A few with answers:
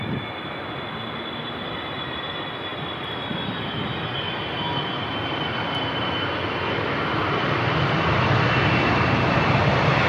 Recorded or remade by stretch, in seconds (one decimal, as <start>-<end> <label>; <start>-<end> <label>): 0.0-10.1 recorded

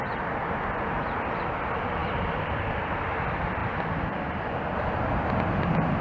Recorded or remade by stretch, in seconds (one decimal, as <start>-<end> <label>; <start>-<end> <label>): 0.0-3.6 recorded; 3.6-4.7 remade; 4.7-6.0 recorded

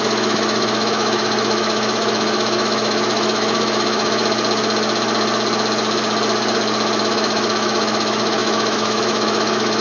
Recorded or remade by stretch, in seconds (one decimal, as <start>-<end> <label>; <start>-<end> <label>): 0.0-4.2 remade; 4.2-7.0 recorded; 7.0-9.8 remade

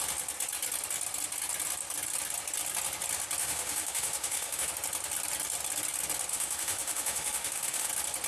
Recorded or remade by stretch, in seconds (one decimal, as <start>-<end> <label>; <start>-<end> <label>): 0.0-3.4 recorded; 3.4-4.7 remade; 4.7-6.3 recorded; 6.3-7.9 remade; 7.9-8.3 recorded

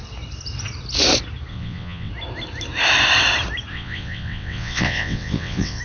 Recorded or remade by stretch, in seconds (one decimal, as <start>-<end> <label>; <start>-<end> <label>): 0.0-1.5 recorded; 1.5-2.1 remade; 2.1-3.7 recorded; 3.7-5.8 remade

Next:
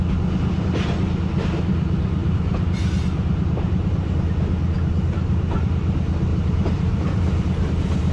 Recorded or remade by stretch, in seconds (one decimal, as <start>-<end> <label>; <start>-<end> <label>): 0.0-2.2 recorded; 2.2-4.1 remade; 4.1-6.3 recorded; 6.3-8.1 remade

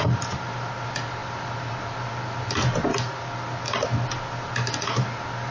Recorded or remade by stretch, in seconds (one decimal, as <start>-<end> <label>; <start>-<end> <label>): 0.0-5.5 recorded

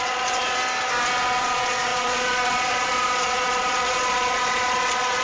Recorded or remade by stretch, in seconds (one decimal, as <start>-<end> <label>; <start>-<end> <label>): 0.0-0.6 remade; 0.6-1.4 recorded; 1.4-5.2 remade